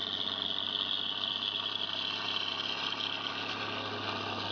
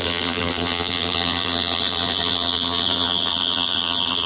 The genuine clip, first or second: first